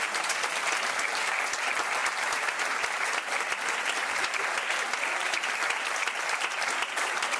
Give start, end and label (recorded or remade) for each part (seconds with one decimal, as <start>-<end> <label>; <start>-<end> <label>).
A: 0.0-7.4 recorded